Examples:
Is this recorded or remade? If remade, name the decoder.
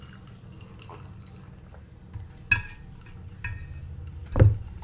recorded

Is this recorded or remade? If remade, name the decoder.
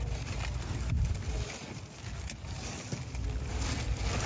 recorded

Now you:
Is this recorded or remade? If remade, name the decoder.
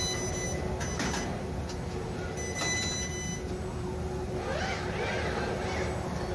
recorded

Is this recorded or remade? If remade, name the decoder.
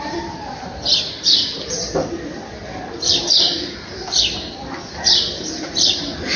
remade, vocoder, BigVGAN v2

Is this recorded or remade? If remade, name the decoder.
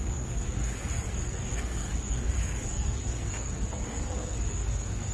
remade, codec, SNAC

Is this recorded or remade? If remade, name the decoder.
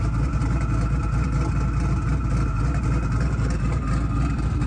recorded